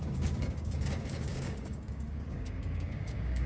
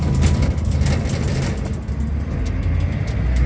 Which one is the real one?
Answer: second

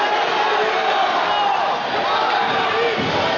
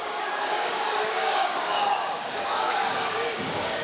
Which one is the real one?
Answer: first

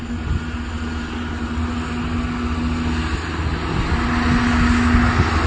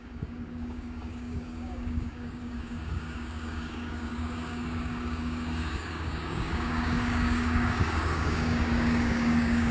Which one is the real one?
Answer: first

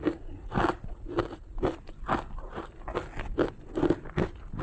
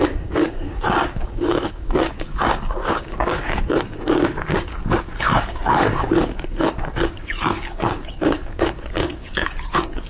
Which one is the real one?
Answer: first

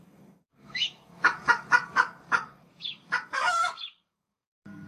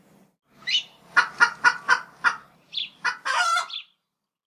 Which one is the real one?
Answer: second